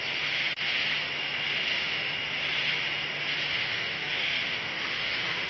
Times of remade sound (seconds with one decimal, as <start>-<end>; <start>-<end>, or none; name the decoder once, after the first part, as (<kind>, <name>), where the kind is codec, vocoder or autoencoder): 1.6-2.2 (autoencoder, DAC-VAE); 3.5-5.5